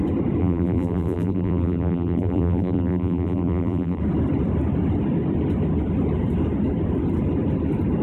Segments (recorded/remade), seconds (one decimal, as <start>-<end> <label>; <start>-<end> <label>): 0.0-0.4 recorded; 0.4-4.0 remade; 4.0-8.0 recorded